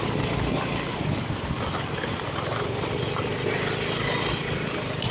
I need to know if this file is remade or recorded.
recorded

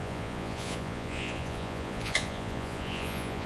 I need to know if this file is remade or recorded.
remade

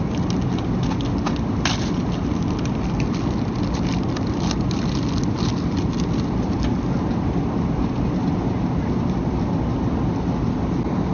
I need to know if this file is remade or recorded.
recorded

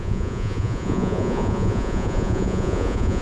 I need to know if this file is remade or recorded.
remade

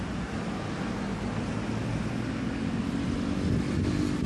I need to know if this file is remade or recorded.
recorded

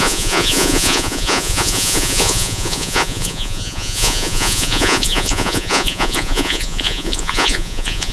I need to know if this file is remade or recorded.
remade